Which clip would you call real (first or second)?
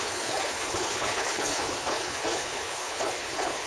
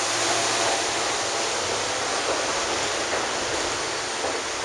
second